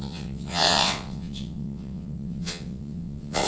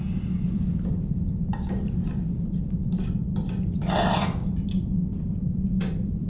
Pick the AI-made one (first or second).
first